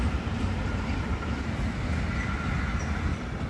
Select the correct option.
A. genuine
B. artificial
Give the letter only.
A